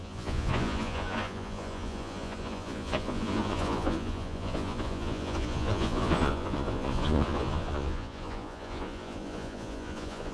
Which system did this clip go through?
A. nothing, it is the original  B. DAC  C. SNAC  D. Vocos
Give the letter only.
D